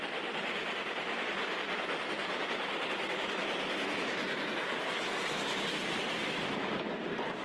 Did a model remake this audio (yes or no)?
no